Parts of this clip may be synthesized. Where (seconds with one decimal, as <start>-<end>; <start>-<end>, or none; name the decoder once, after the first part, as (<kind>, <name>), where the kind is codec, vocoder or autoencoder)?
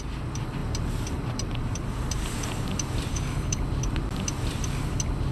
3.1-3.6 (codec, HILCodec)